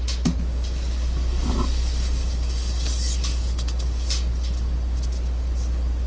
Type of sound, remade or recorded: recorded